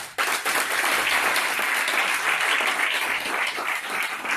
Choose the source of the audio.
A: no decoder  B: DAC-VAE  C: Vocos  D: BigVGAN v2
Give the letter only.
D